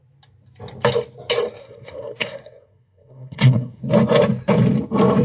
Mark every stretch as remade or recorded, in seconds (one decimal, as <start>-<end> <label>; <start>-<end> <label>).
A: 0.0-1.6 recorded; 1.6-3.8 remade; 3.8-5.2 recorded